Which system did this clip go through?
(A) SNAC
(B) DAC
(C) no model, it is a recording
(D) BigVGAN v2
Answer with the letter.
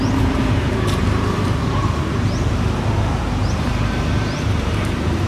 D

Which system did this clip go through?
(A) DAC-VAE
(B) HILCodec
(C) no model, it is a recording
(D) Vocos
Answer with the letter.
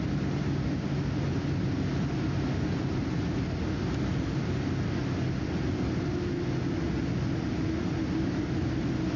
C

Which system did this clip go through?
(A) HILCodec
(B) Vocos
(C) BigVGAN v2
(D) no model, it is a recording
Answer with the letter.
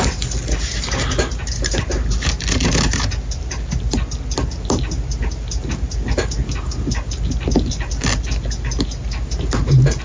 D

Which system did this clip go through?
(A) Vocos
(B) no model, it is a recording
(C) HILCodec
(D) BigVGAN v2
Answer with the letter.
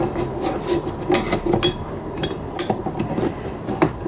B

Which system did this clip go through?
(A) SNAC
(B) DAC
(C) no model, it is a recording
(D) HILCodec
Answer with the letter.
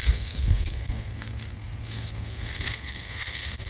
A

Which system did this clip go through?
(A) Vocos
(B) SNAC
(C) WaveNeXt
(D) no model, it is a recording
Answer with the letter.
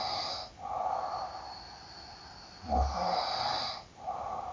D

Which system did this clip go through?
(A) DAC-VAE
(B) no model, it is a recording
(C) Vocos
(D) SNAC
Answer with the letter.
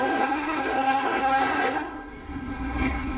D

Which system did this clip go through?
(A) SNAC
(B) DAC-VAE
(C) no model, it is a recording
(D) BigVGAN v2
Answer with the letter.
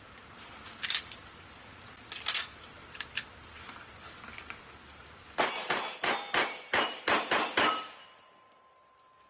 D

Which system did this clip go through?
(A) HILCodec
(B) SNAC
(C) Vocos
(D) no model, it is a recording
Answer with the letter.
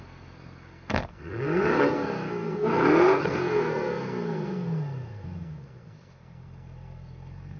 B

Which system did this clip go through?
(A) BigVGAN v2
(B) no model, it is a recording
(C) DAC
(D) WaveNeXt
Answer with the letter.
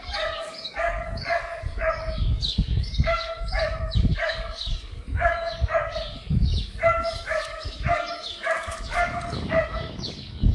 C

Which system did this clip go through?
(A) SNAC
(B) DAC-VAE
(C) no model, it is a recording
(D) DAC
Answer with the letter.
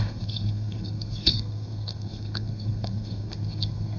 A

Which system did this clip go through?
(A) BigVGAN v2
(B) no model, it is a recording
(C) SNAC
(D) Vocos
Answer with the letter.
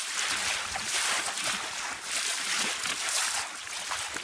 B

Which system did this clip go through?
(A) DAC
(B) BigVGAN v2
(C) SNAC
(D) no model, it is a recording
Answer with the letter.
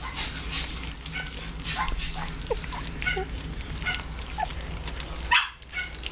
D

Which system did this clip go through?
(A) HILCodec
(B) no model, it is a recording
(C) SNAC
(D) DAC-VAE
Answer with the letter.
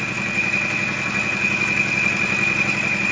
B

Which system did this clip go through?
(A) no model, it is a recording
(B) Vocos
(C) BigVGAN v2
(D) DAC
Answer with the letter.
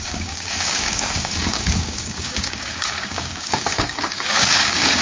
D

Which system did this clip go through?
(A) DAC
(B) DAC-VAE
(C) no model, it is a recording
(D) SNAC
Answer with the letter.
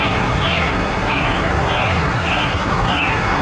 D